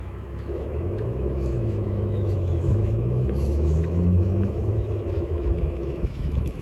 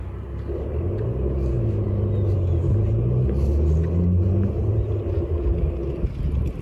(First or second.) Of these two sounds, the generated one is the first